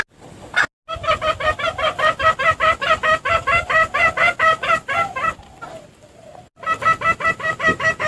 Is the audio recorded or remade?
recorded